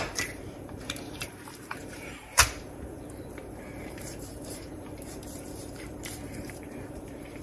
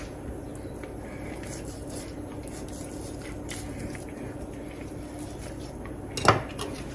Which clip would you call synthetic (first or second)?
first